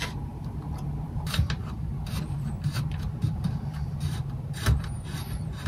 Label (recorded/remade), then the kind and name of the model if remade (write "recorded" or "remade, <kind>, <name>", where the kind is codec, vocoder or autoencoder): remade, vocoder, BigVGAN v2